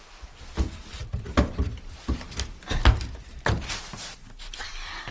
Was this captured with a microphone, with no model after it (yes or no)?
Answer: yes